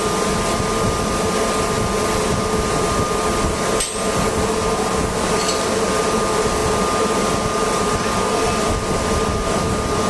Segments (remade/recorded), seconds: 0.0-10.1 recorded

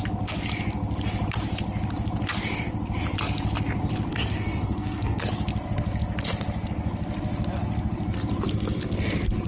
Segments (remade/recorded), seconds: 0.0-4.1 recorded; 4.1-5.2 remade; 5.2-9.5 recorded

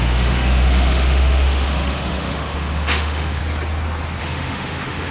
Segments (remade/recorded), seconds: 0.0-3.4 remade; 3.4-4.2 recorded; 4.2-5.1 remade